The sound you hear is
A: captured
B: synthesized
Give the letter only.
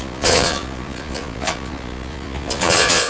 B